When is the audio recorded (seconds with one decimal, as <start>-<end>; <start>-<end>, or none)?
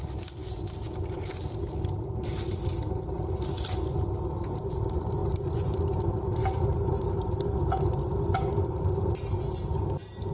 0.0-10.3